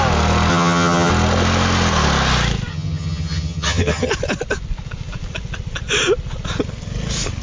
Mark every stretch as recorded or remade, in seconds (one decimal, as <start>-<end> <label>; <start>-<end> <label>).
0.0-0.5 recorded; 0.5-1.1 remade; 1.1-2.7 recorded; 2.7-4.1 remade; 4.1-7.4 recorded